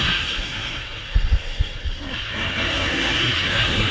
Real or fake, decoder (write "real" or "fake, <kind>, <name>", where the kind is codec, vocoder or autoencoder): fake, codec, SNAC